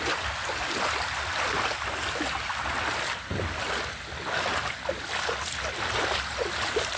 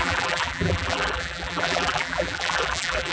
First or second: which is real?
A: first